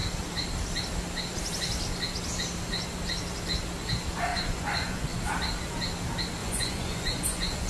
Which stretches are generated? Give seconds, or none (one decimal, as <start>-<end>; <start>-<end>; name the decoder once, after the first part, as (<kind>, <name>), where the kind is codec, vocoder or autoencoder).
4.3-5.2 (vocoder, Vocos); 6.4-7.7